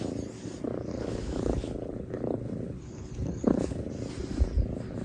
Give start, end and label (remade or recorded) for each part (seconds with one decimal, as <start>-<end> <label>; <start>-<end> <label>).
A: 0.0-0.9 recorded; 0.9-3.9 remade; 3.9-5.0 recorded